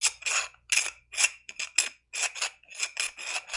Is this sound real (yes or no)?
yes